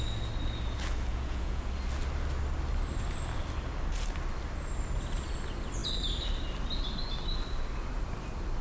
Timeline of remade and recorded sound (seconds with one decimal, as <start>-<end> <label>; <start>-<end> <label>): 0.0-1.1 recorded; 1.1-1.6 remade; 1.6-8.6 recorded

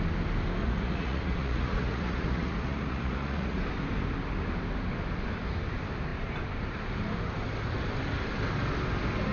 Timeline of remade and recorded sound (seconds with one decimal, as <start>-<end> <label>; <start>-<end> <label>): 0.0-0.6 recorded; 0.6-3.6 remade; 3.6-9.3 recorded

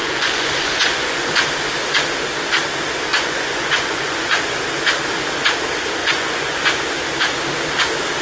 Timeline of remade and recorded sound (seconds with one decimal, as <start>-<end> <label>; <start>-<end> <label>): 0.0-1.3 remade; 1.3-3.1 recorded; 3.1-4.6 remade; 4.6-6.0 recorded; 6.0-6.8 remade; 6.8-8.2 recorded

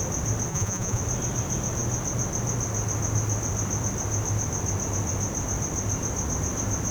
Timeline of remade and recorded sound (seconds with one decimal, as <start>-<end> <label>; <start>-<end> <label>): 0.0-0.5 recorded; 0.5-1.0 remade; 1.0-6.9 recorded

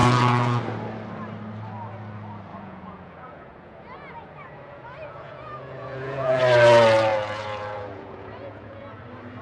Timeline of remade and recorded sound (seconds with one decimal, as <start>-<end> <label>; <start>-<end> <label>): 0.0-0.6 remade; 0.6-2.5 recorded; 2.5-6.4 remade; 6.4-7.1 recorded; 7.1-9.0 remade; 9.0-9.4 recorded

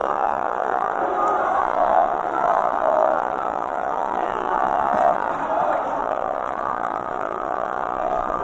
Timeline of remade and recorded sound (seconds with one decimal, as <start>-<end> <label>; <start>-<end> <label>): 0.0-1.0 remade; 1.0-1.6 recorded; 1.6-5.3 remade; 5.3-6.0 recorded; 6.0-8.4 remade

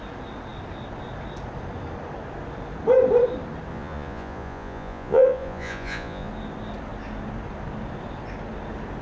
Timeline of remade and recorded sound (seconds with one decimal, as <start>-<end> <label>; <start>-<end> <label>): 0.0-3.7 recorded; 3.7-6.3 remade; 6.3-9.0 recorded

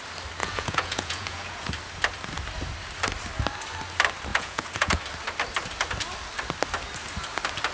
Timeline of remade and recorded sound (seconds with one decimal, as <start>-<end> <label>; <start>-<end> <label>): 0.0-0.4 recorded; 0.4-1.7 remade; 1.7-4.3 recorded; 4.3-5.0 remade; 5.0-7.7 recorded